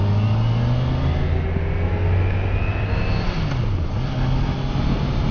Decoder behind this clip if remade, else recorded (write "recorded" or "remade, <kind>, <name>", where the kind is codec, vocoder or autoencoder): recorded